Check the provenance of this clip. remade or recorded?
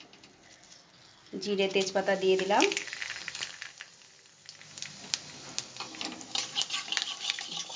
recorded